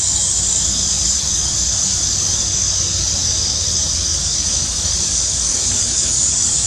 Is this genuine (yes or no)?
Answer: no